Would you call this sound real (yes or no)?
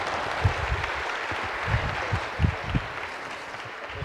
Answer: yes